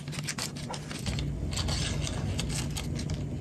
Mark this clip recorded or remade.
recorded